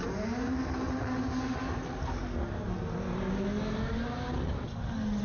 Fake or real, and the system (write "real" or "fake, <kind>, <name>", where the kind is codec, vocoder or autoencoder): real